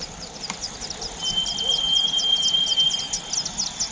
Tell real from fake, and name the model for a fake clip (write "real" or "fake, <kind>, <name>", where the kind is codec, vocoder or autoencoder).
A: real